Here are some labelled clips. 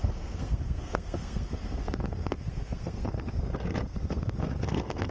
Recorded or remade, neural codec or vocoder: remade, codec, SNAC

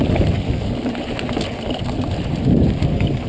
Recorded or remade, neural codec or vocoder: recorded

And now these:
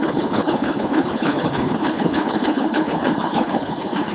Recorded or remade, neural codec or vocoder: remade, codec, HILCodec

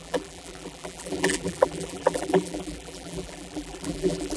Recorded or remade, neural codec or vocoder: remade, vocoder, BigVGAN v2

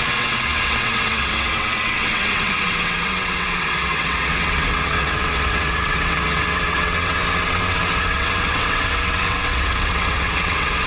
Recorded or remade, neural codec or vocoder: remade, vocoder, WaveNeXt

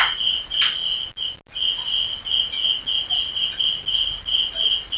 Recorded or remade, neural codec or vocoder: recorded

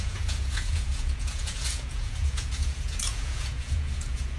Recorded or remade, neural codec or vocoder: remade, vocoder, Vocos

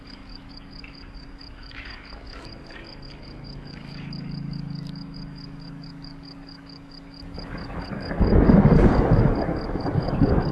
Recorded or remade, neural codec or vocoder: remade, codec, DAC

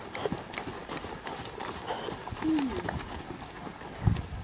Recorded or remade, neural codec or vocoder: recorded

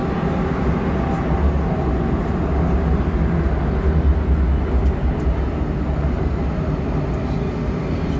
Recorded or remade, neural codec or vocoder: recorded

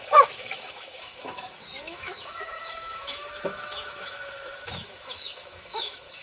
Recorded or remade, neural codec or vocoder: remade, autoencoder, DAC-VAE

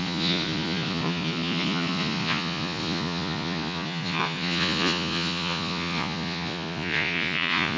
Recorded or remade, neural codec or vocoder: remade, vocoder, Vocos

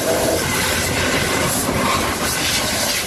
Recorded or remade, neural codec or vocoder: recorded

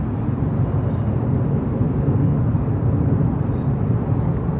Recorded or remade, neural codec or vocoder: recorded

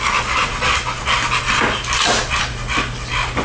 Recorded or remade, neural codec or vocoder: recorded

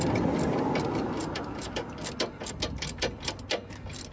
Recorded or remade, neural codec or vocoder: recorded